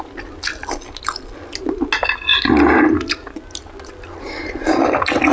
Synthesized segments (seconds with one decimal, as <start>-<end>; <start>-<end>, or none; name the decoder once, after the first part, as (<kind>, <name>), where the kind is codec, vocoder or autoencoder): none